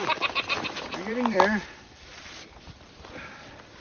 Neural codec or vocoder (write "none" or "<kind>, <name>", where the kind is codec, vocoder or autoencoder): vocoder, BigVGAN v2